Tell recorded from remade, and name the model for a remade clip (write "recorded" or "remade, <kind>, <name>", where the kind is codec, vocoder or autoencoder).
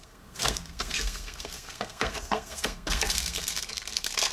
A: remade, codec, SNAC